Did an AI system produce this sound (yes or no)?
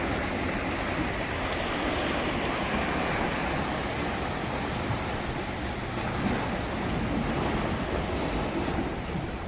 no